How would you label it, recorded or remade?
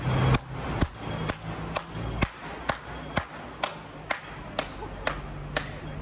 recorded